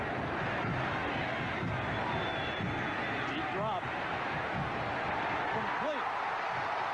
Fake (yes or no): no